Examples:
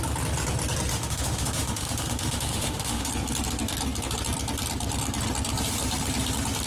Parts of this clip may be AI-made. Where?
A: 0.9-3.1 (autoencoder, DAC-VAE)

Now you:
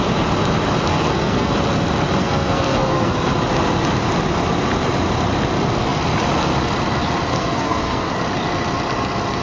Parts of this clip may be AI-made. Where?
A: 0.9-1.5 (codec, SNAC); 2.2-3.3; 7.3-8.1

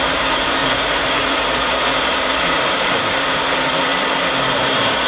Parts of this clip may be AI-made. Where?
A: 0.0-3.9 (vocoder, BigVGAN v2); 4.5-5.1

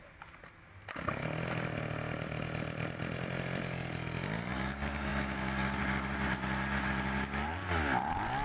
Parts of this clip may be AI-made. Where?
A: none

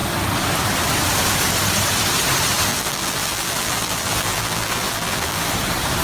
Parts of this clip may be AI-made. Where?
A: 2.7-5.5 (vocoder, BigVGAN v2)